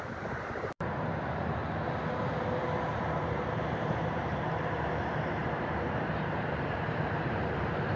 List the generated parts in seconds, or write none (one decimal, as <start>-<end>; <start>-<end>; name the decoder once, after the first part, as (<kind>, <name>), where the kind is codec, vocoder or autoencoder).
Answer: 0.0-1.6 (vocoder, BigVGAN v2); 2.9-8.0

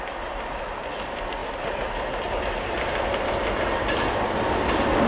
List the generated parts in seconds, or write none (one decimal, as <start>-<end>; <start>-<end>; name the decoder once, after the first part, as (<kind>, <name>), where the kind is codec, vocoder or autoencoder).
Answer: none

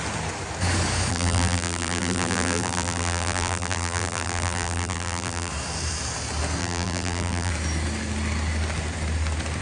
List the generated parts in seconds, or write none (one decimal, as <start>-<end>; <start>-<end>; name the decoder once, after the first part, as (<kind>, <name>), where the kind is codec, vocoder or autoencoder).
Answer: 1.1-5.5 (vocoder, BigVGAN v2); 6.6-7.5

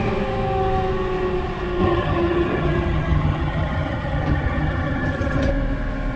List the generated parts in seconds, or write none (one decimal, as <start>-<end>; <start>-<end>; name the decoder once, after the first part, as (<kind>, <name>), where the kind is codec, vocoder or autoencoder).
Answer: 1.8-5.5 (vocoder, HiFi-GAN)

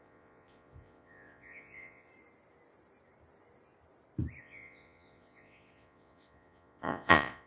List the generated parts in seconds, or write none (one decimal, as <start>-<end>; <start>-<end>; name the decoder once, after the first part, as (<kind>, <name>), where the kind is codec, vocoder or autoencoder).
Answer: 0.0-2.1 (vocoder, Vocos); 4.4-7.5